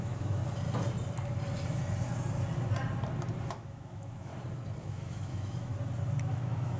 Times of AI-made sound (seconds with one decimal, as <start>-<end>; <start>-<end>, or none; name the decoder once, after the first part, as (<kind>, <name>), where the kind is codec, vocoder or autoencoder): 0.0-0.4 (autoencoder, DAC-VAE); 3.5-4.3; 4.8-5.7; 6.3-6.8